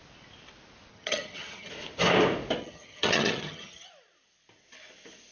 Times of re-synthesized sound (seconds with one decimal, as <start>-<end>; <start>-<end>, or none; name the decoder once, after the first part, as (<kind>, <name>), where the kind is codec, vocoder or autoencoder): 0.9-1.7 (vocoder, HiFi-GAN); 2.6-3.9